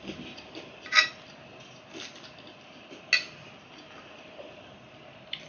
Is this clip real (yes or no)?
yes